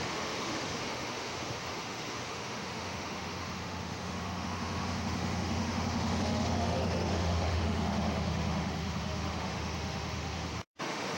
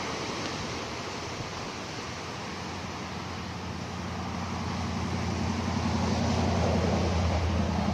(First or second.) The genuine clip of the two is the second